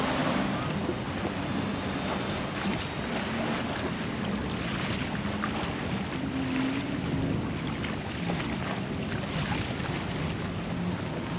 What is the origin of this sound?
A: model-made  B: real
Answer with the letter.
B